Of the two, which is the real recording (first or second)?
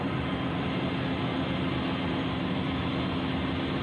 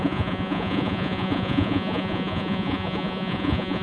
first